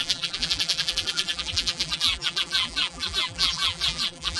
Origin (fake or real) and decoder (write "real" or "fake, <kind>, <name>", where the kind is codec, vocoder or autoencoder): fake, vocoder, BigVGAN v2